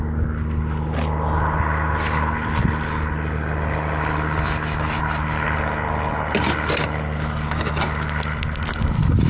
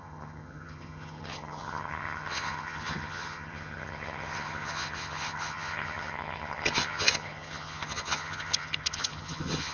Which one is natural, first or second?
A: first